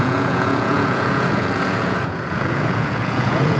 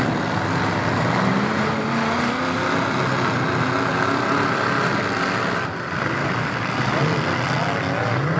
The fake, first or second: first